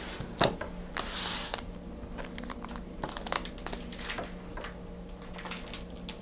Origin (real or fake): real